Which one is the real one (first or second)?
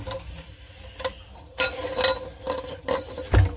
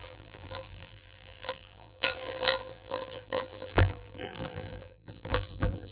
first